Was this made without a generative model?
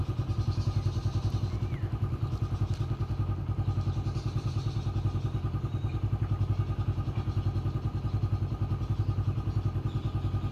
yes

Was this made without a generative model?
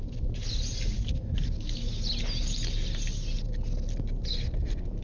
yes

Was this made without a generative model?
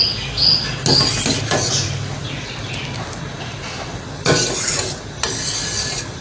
yes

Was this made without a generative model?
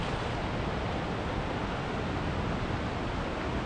yes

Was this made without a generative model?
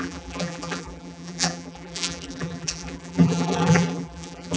no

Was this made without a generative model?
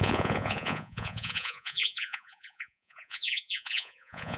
no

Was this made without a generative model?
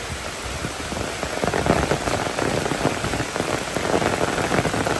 yes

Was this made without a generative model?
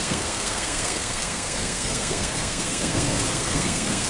no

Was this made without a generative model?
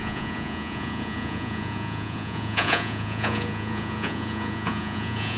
no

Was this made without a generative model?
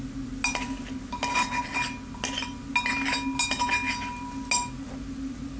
yes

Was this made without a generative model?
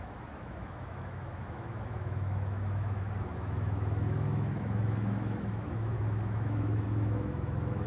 no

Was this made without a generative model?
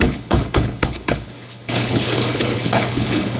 no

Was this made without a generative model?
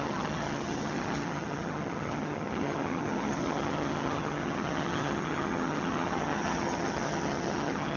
no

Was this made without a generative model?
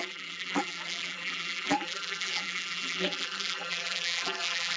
no